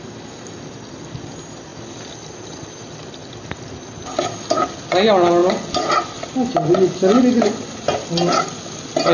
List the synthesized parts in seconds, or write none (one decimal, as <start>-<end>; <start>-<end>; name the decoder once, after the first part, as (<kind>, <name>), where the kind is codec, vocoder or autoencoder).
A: none